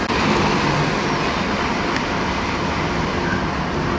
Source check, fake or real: real